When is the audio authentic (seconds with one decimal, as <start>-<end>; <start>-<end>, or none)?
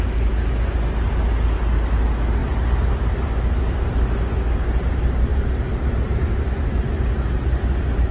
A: 0.0-2.4; 3.6-5.3; 6.5-8.1